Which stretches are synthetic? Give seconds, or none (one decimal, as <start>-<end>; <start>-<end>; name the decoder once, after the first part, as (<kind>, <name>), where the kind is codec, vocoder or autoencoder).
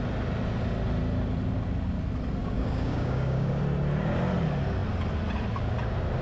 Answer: 2.4-3.6 (codec, DAC)